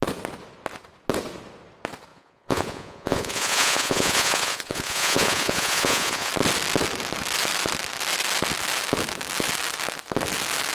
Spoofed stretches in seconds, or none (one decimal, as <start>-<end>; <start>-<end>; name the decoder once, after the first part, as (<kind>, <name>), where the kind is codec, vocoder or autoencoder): 2.1-6.3 (vocoder, Vocos)